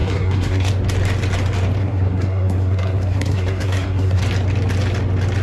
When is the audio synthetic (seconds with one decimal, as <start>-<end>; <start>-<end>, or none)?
0.0-0.7; 1.8-4.2